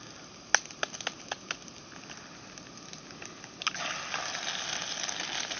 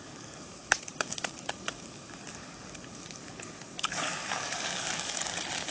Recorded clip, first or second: first